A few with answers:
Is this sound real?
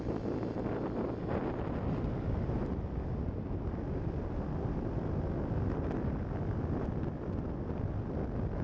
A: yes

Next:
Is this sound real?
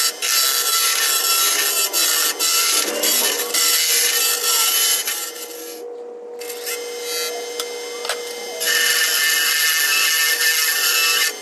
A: yes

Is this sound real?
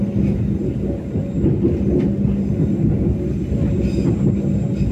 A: yes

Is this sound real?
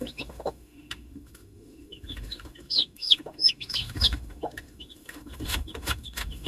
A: no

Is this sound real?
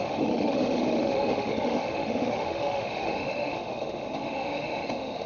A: no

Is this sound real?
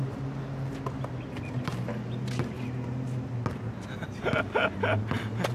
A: yes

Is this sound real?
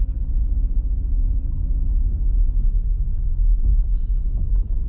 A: yes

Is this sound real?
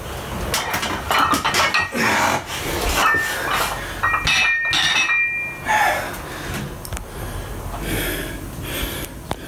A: yes